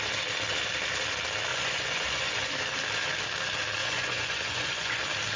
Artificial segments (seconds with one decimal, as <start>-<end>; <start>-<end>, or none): 1.5-2.5; 3.8-5.0